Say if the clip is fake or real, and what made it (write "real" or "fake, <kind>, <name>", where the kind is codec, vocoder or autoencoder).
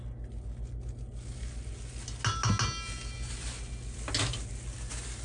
real